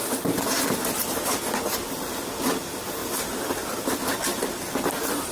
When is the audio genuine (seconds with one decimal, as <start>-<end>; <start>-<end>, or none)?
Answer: 1.3-3.0; 3.9-5.3